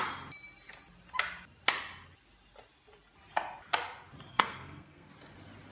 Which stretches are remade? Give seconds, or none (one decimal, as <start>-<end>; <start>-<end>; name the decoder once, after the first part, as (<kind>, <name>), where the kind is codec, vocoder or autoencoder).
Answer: 4.3-5.1 (codec, SNAC)